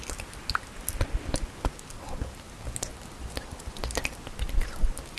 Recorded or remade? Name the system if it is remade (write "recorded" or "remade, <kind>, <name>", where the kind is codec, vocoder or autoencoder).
recorded